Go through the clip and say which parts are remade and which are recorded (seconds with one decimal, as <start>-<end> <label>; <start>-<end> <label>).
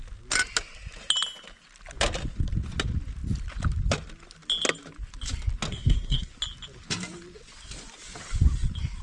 0.0-5.7 recorded; 5.7-6.3 remade; 6.3-9.0 recorded